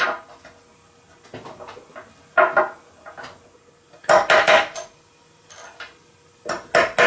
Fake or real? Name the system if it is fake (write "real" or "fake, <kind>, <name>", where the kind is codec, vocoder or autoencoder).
real